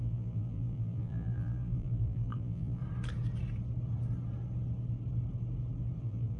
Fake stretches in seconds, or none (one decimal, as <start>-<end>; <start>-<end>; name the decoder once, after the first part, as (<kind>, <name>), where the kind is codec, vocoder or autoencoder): 0.0-2.8 (vocoder, BigVGAN v2); 6.0-6.4